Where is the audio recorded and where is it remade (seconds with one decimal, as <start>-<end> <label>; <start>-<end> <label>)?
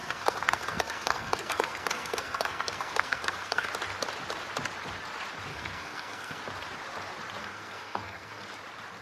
0.0-3.7 remade; 3.7-5.5 recorded; 5.5-6.4 remade; 6.4-7.4 recorded; 7.4-8.4 remade; 8.4-9.0 recorded